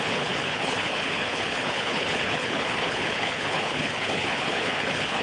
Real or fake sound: fake